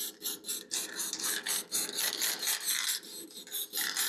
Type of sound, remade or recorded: recorded